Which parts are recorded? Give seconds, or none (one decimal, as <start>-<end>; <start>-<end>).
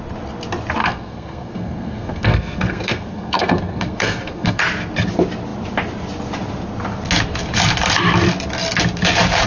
0.0-0.8; 4.6-9.5